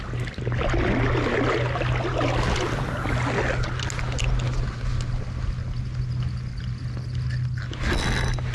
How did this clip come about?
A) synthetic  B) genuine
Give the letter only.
B